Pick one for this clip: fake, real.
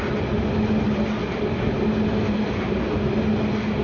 real